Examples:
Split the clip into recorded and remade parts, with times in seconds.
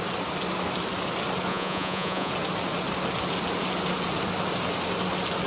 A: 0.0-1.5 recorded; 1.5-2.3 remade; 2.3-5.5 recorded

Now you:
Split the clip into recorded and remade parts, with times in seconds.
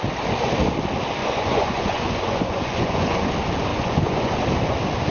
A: 0.0-1.2 recorded; 1.2-3.3 remade; 3.3-3.7 recorded; 3.7-4.4 remade; 4.4-5.1 recorded